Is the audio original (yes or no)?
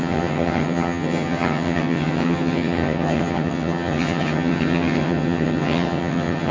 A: no